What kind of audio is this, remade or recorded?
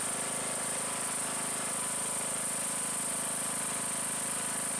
recorded